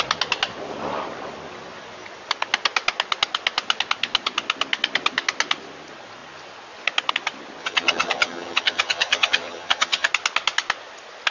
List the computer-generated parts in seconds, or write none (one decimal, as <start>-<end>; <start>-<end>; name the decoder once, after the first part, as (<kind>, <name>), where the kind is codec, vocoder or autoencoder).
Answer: 7.6-10.1 (vocoder, HiFi-GAN)